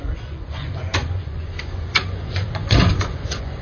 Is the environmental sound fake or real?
fake